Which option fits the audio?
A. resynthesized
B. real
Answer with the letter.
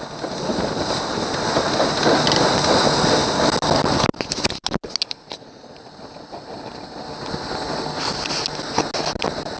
B